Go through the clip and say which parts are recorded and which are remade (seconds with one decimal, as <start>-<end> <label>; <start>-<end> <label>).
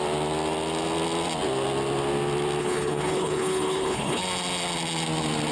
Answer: 0.0-2.6 recorded; 2.6-4.2 remade; 4.2-5.5 recorded